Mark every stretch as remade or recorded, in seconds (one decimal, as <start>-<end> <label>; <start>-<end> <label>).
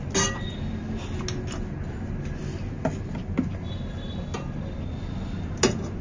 0.0-6.0 recorded